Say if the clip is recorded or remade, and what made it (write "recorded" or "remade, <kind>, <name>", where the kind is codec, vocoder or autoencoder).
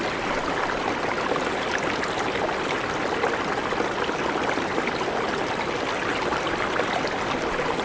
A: recorded